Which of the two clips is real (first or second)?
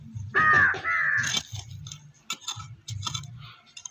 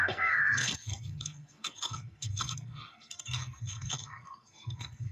first